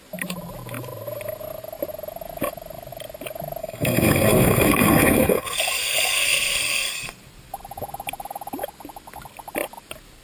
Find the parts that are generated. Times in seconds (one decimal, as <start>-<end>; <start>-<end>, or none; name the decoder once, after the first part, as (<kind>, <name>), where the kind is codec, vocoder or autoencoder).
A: 3.6-7.1 (codec, SNAC)

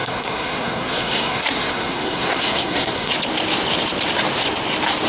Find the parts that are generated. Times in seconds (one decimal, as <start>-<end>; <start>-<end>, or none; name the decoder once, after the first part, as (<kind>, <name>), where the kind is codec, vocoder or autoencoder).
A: 0.0-3.1 (codec, SNAC)

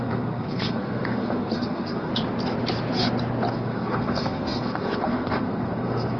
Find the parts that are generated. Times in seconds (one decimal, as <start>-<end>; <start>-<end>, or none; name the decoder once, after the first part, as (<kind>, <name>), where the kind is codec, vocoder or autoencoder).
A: 0.0-2.1 (codec, SNAC); 3.5-6.2

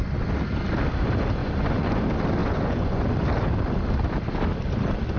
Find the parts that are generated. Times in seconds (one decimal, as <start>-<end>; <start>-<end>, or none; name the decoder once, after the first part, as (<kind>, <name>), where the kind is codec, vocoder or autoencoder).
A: 1.4-2.0 (vocoder, Vocos); 2.4-3.0

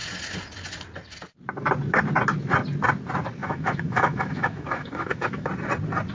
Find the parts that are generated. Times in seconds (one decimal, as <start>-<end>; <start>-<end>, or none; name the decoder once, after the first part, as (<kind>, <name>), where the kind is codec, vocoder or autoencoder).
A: 3.4-5.5 (autoencoder, DAC-VAE)

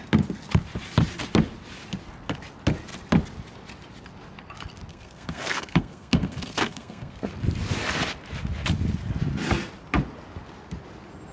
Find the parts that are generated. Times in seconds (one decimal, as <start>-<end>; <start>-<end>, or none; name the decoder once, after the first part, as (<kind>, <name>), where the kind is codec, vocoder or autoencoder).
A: 4.9-7.3 (codec, SNAC)

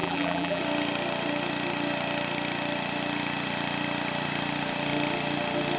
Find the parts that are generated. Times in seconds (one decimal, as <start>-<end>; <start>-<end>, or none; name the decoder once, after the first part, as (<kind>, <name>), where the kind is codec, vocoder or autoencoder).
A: 0.0-0.6 (vocoder, BigVGAN v2)

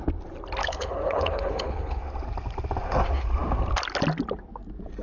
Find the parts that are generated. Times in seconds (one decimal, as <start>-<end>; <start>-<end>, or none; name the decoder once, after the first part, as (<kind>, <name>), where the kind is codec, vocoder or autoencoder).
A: 0.6-2.0 (codec, HILCodec)